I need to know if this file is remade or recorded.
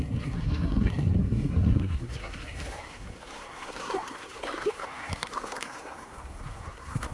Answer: remade